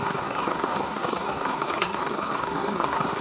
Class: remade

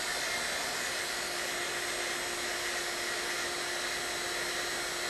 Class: recorded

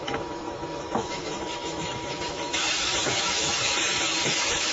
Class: remade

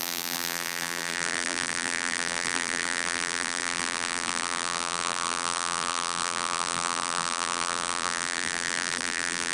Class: remade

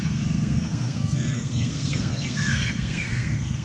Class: remade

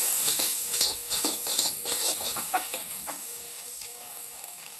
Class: remade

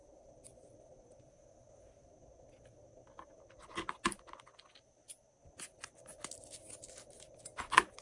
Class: recorded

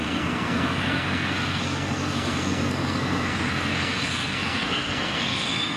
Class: remade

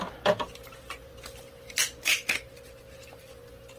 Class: recorded